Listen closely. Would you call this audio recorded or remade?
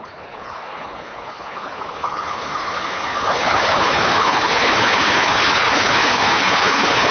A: remade